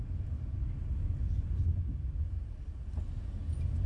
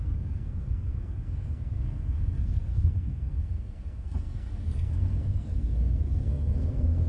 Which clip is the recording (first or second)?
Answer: first